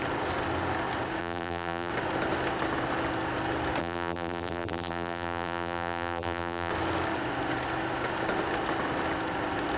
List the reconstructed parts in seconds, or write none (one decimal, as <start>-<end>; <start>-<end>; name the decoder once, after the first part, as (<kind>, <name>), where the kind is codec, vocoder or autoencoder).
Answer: 1.2-1.9 (vocoder, BigVGAN v2); 3.8-6.7